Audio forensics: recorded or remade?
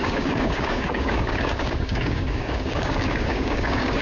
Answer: remade